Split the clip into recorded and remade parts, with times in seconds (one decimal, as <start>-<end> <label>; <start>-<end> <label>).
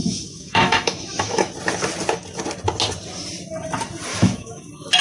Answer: 0.0-1.5 remade; 1.5-4.1 recorded; 4.1-4.6 remade; 4.6-5.0 recorded